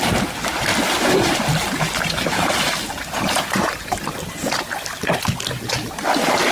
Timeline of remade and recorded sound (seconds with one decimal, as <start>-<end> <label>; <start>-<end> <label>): 0.0-0.7 recorded; 0.7-4.6 remade; 4.6-6.5 recorded